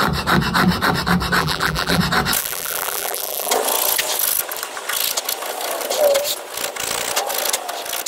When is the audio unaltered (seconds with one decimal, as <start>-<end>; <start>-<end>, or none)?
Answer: 0.0-1.4; 2.0-2.4; 3.5-8.1